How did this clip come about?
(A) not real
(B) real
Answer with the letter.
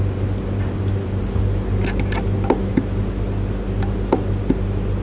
B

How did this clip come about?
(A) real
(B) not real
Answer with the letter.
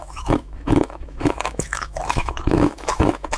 B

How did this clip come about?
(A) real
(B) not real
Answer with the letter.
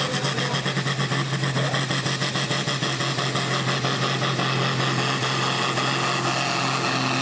A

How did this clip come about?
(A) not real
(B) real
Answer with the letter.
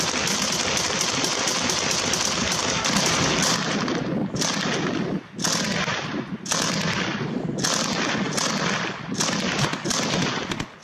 B